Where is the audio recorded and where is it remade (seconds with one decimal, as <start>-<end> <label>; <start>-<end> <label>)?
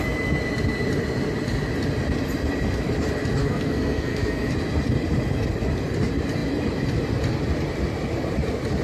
0.0-3.4 recorded; 3.4-4.5 remade; 4.5-8.8 recorded